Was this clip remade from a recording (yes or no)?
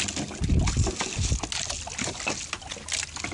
no